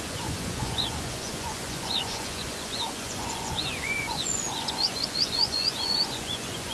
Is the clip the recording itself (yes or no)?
no